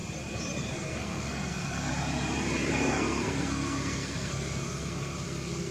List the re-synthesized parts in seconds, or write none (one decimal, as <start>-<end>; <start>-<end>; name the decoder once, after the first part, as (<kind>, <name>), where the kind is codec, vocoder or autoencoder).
0.7-1.9 (codec, SNAC); 2.7-5.7